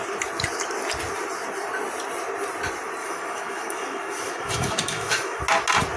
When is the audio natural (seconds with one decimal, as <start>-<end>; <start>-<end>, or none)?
0.0-3.0; 5.4-6.0